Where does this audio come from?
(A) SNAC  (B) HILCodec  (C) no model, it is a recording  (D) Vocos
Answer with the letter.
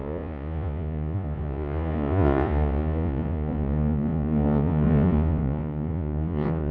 D